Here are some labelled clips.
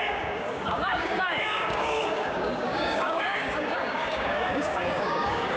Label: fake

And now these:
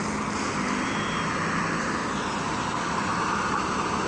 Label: real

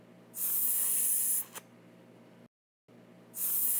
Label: real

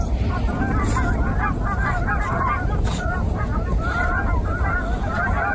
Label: real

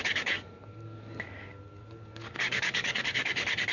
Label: fake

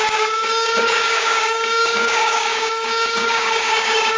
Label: fake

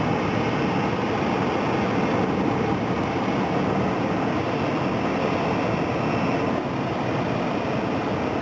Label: real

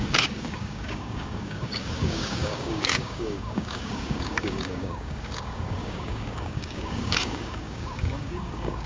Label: fake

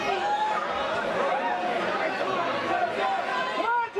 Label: real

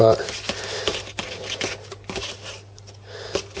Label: real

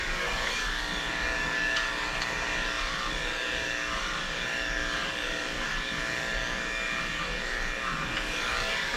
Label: fake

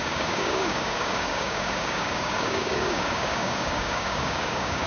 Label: fake